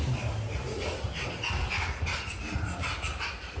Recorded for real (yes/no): yes